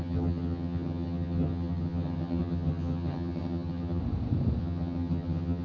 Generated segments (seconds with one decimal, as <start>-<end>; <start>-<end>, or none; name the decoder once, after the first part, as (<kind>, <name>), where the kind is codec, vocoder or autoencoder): 0.0-4.0 (vocoder, HiFi-GAN); 4.6-5.6